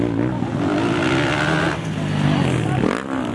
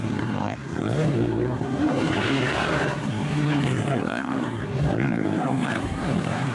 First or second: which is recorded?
first